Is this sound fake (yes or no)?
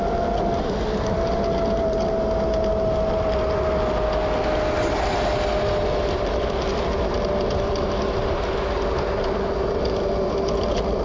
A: no